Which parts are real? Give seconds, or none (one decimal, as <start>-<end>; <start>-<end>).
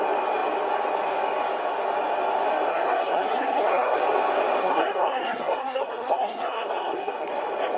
0.0-2.7; 4.0-4.6; 7.3-7.8